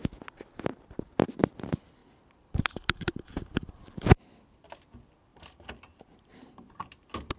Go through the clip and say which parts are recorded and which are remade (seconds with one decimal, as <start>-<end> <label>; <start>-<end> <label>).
0.0-2.0 recorded; 2.0-3.7 remade; 3.7-5.3 recorded; 5.3-6.9 remade; 6.9-7.4 recorded